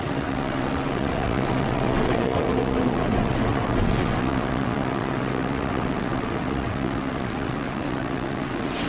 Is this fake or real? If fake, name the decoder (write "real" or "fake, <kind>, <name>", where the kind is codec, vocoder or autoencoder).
fake, vocoder, WaveNeXt